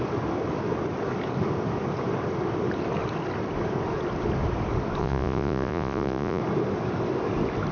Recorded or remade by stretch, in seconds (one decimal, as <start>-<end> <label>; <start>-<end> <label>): 0.0-5.0 recorded; 5.0-6.4 remade; 6.4-7.7 recorded